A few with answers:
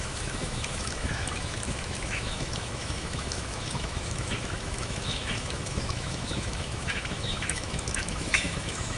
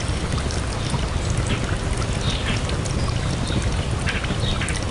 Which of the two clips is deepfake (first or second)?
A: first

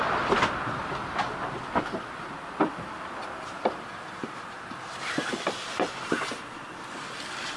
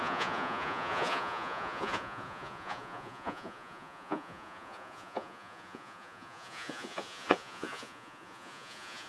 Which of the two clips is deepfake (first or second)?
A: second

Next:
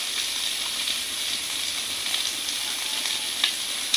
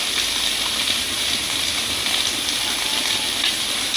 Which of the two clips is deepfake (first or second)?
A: second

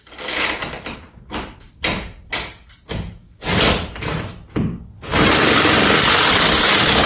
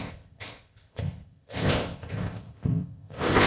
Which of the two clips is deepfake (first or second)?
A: second